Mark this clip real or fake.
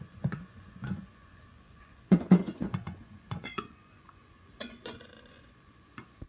fake